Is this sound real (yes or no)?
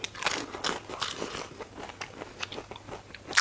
yes